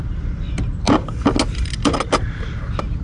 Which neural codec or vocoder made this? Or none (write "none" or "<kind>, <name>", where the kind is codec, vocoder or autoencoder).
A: none